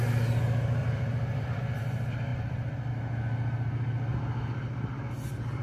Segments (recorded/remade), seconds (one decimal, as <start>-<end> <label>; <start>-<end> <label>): 0.0-0.8 recorded; 0.8-1.8 remade; 1.8-2.3 recorded; 2.3-2.9 remade; 2.9-5.6 recorded